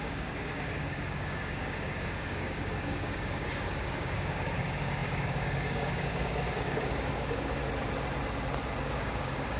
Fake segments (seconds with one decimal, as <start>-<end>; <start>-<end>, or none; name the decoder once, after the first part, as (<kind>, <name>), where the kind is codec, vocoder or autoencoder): 0.0-7.6 (codec, DAC); 8.8-9.6

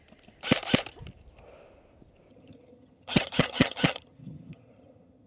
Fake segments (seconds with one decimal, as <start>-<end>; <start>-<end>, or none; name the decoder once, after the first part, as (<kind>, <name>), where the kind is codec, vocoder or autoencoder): 2.3-5.3 (vocoder, HiFi-GAN)

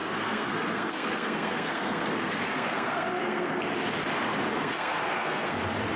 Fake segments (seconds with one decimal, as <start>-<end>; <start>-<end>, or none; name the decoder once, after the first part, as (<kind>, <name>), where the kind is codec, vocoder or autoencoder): 0.0-3.6 (codec, SNAC); 4.5-5.6

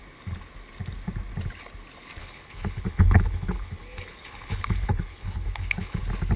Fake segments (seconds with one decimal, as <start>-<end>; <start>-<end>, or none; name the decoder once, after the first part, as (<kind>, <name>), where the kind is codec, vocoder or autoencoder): 2.2-6.0 (codec, HILCodec)

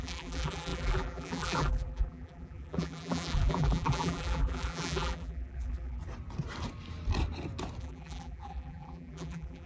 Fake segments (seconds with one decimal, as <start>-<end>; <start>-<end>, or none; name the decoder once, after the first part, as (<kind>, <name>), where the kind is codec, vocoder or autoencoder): 0.0-6.0 (vocoder, BigVGAN v2); 7.8-9.7

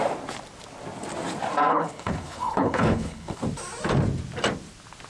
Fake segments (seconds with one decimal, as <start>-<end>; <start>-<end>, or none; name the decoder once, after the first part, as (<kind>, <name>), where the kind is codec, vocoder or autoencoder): 1.7-3.4 (codec, HILCodec)

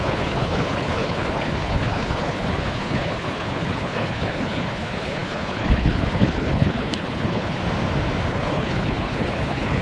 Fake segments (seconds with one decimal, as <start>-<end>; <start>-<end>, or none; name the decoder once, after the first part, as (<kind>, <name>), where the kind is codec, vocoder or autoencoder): 0.0-7.6 (codec, HILCodec); 8.3-9.8

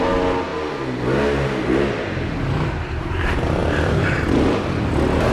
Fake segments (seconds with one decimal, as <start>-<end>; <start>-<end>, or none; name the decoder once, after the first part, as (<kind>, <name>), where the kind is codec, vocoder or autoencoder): none